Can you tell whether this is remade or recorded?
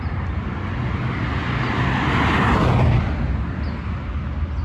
recorded